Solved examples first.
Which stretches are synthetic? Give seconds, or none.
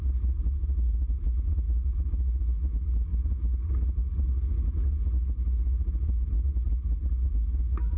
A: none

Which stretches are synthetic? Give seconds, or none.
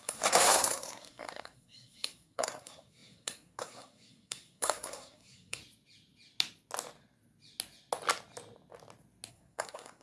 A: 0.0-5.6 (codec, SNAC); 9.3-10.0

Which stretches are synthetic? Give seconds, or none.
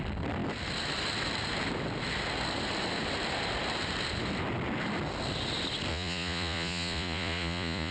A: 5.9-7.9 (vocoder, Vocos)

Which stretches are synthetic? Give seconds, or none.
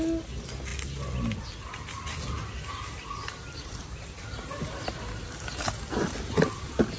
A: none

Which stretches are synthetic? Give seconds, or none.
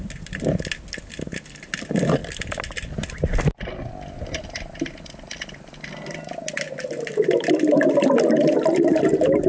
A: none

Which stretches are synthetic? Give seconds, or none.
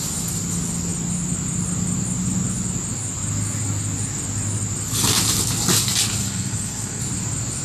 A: 6.2-7.0 (codec, SNAC)